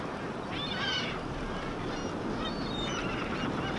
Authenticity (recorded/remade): recorded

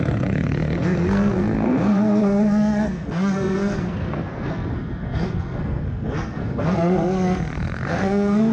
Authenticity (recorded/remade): remade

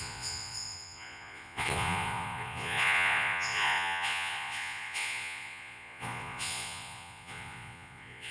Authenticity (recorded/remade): remade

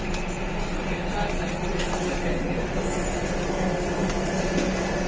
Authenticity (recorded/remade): recorded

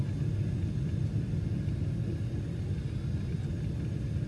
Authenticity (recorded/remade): recorded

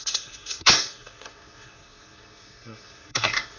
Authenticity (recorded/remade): remade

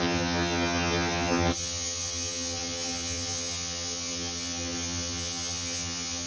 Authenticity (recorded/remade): remade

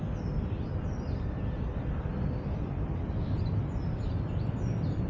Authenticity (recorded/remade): recorded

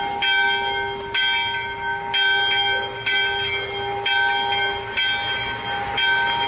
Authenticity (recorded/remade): recorded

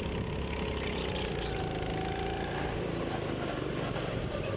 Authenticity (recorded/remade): recorded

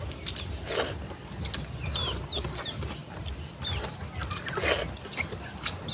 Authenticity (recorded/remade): recorded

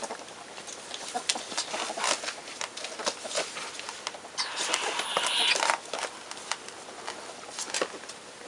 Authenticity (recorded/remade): recorded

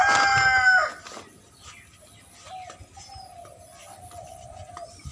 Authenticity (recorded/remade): recorded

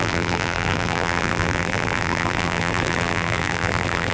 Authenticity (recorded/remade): remade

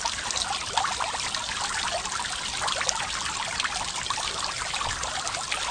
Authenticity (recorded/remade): recorded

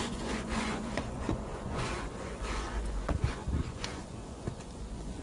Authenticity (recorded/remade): remade